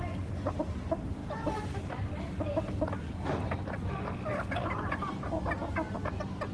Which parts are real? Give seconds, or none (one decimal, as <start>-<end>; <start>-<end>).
0.0-6.5